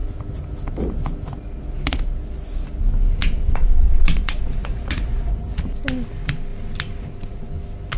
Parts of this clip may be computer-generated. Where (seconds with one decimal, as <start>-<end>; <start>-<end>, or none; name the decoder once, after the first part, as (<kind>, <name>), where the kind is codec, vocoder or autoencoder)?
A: 3.2-5.4 (vocoder, Vocos)